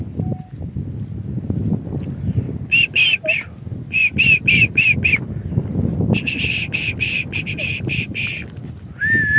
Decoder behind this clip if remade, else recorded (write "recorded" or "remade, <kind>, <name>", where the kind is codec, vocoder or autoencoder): recorded